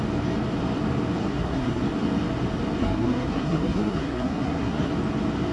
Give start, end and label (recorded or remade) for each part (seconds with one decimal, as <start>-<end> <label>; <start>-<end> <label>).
0.0-1.2 recorded; 1.2-1.8 remade; 1.8-2.8 recorded; 2.8-4.9 remade; 4.9-5.5 recorded